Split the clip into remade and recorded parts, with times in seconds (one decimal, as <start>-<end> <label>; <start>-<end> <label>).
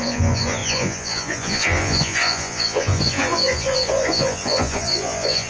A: 0.0-5.5 remade